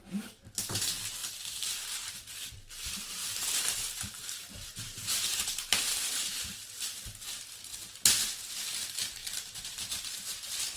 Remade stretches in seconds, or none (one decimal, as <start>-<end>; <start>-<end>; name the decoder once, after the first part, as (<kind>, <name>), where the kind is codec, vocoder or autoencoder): 1.2-2.5 (vocoder, BigVGAN v2); 3.2-7.6; 9.2-10.8